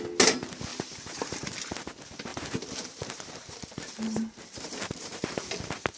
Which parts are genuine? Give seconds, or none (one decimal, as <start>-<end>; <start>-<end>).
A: 0.0-0.7; 1.6-2.3; 5.5-6.0